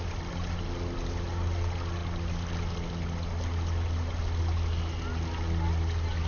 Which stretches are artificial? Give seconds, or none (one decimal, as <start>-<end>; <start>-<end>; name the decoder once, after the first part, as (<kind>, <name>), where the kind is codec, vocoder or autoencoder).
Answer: none